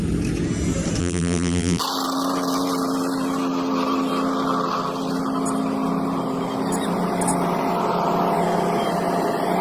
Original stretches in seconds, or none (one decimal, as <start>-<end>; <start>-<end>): 0.0-1.0; 1.8-9.6